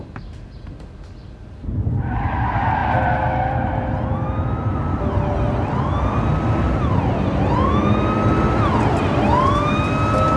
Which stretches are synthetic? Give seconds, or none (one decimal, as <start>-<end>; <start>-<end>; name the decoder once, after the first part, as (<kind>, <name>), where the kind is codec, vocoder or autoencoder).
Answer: none